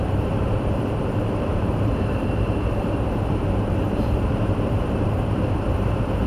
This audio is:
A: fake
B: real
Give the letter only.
A